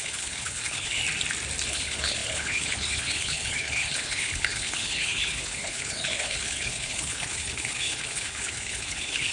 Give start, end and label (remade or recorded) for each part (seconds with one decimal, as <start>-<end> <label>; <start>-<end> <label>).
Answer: 0.0-1.0 remade; 1.0-1.7 recorded; 1.7-9.3 remade